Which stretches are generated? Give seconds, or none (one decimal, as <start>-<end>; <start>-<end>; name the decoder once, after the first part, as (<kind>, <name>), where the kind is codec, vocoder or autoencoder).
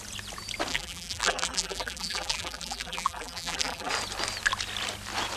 0.7-3.9 (vocoder, BigVGAN v2)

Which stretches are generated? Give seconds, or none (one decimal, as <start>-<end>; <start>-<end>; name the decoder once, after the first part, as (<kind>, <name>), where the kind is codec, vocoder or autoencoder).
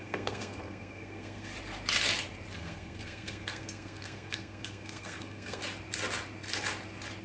0.0-1.5 (codec, SNAC); 2.5-5.6